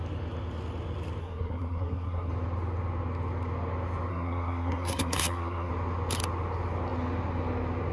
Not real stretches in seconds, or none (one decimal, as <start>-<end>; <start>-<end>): 1.2-2.3; 4.1-5.7